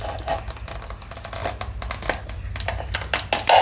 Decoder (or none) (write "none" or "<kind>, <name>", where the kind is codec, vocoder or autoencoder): none